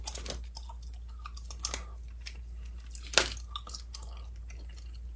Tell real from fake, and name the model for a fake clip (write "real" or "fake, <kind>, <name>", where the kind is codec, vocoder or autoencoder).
real